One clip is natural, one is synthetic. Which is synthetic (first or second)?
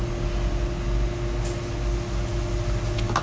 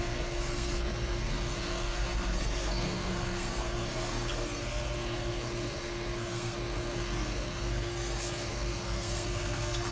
second